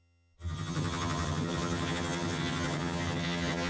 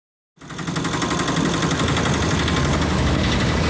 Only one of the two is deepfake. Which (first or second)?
first